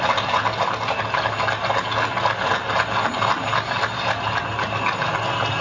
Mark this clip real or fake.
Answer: real